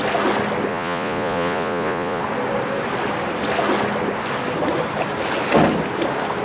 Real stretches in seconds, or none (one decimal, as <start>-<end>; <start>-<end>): 0.0-0.7; 2.2-6.4